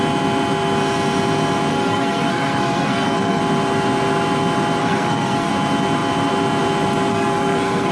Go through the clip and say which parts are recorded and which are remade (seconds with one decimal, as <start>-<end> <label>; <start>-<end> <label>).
0.0-1.7 recorded; 1.7-3.4 remade; 3.4-4.8 recorded; 4.8-5.5 remade; 5.5-7.1 recorded; 7.1-7.9 remade